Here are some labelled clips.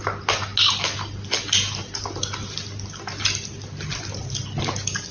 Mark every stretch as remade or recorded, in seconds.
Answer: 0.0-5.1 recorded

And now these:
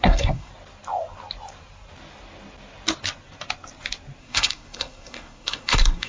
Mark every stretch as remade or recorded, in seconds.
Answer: 0.0-0.5 remade; 0.5-4.2 recorded; 4.2-6.1 remade

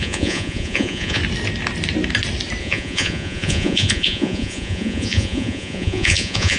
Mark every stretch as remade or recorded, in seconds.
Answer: 0.0-1.2 remade; 1.2-2.6 recorded; 2.6-6.6 remade

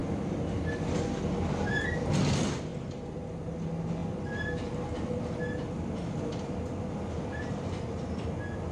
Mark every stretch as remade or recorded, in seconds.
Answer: 0.0-2.7 recorded; 2.7-3.2 remade; 3.2-8.7 recorded

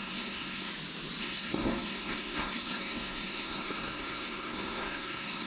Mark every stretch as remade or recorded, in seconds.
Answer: 0.0-0.7 remade; 0.7-1.2 recorded; 1.2-5.5 remade

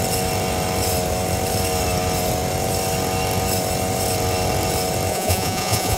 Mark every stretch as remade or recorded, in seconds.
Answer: 0.0-5.1 recorded; 5.1-6.0 remade

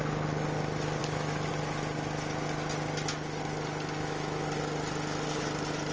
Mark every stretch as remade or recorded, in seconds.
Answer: 0.0-1.0 recorded; 1.0-1.5 remade; 1.5-4.0 recorded; 4.0-4.5 remade; 4.5-5.9 recorded